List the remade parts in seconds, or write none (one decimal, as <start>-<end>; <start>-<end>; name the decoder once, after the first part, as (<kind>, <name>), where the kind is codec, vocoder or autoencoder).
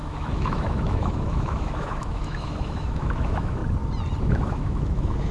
0.0-3.6 (autoencoder, DAC-VAE); 4.2-5.3